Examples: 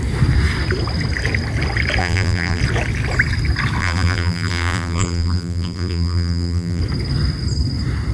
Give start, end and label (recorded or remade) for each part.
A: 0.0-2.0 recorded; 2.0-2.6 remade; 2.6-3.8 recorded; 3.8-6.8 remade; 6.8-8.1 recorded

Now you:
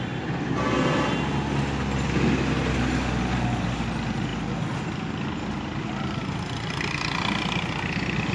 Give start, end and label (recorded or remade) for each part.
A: 0.0-8.3 recorded

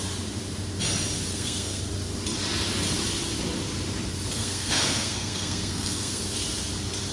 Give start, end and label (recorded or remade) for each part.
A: 0.0-1.3 recorded; 1.3-1.8 remade; 1.8-4.3 recorded; 4.3-6.2 remade; 6.2-7.1 recorded

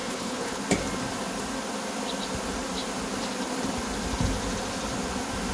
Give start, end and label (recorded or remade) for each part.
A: 0.0-0.6 remade; 0.6-5.5 recorded

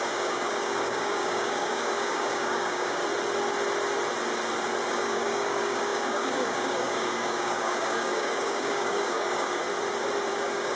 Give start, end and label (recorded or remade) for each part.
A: 0.0-3.0 remade; 3.0-4.9 recorded; 4.9-9.6 remade; 9.6-10.3 recorded; 10.3-10.8 remade

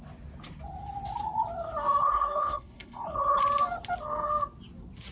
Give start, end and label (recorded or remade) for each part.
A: 0.0-2.0 recorded; 2.0-3.4 remade; 3.4-5.1 recorded